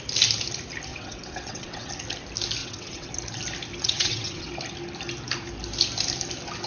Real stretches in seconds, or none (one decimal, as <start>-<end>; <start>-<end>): 0.0-0.9; 1.9-2.6; 3.1-3.8; 4.5-6.7